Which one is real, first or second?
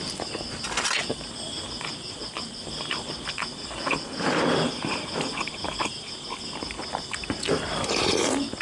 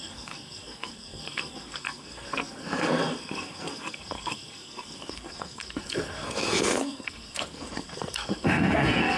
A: first